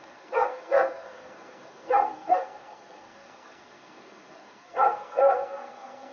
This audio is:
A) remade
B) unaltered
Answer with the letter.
A